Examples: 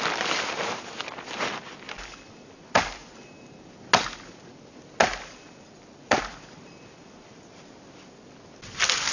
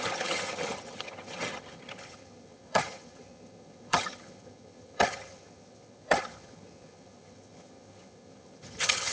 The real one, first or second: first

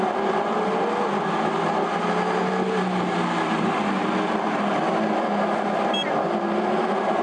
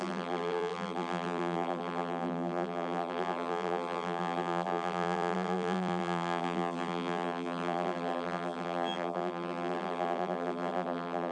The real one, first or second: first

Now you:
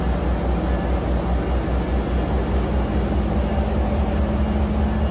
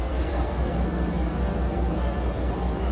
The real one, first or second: first